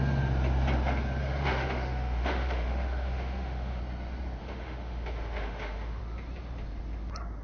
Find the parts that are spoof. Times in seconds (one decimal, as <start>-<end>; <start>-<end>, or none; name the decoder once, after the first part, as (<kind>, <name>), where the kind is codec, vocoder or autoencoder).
1.2-3.8 (autoencoder, DAC-VAE); 4.4-6.0